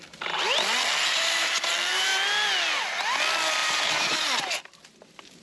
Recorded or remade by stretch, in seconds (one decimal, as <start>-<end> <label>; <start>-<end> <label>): 0.0-1.1 recorded; 1.1-1.7 remade; 1.7-3.6 recorded; 3.6-4.6 remade; 4.6-5.4 recorded